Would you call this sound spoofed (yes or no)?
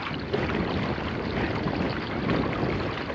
no